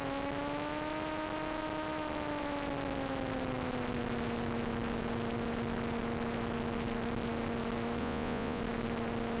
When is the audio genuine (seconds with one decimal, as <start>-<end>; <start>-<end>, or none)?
0.0-8.0; 8.6-9.4